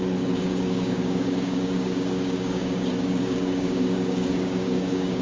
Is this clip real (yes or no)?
no